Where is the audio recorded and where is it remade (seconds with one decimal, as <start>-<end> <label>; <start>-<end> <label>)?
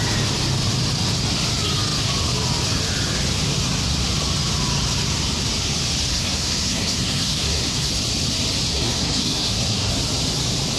0.0-6.1 recorded; 6.1-7.9 remade; 7.9-8.7 recorded; 8.7-9.9 remade; 9.9-10.8 recorded